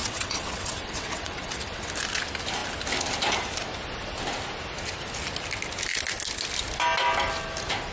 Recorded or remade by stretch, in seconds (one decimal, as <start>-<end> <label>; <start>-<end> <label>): 0.0-1.9 remade; 1.9-7.9 recorded